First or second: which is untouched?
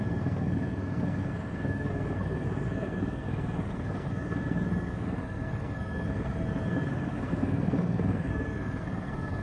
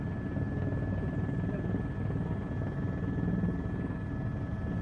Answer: second